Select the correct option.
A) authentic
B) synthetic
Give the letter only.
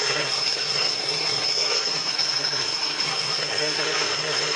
B